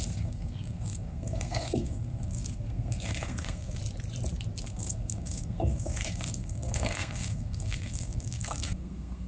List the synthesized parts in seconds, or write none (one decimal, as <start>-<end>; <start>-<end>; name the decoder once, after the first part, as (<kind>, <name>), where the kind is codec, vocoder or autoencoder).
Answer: 0.0-3.8 (codec, SNAC); 4.6-9.3